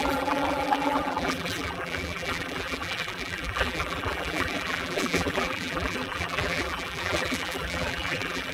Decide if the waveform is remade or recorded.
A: remade